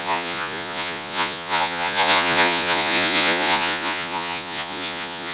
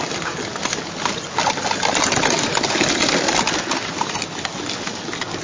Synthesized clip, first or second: first